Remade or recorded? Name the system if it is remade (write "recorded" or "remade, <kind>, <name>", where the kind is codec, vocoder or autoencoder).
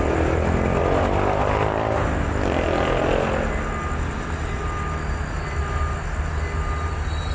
recorded